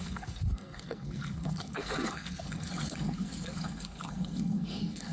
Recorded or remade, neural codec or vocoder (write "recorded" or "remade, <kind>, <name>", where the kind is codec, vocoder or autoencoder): remade, codec, SNAC